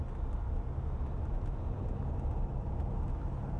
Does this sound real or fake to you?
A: real